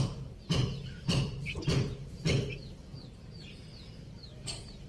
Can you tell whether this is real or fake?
fake